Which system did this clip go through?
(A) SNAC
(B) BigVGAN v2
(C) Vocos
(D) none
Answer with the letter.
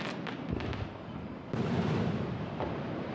D